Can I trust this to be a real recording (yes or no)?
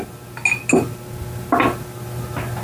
yes